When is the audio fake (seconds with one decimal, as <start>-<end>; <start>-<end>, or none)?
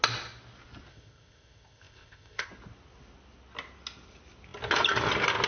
0.9-2.5